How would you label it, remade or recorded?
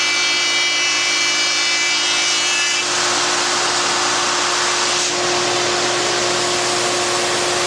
recorded